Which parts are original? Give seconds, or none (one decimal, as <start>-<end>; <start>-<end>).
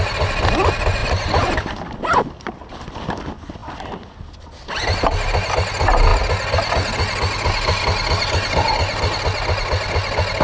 0.0-1.0; 1.6-10.4